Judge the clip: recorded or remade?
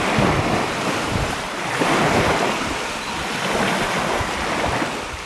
recorded